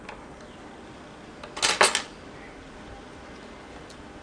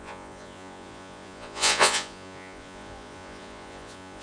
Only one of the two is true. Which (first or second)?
first